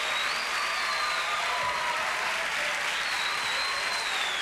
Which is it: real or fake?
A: real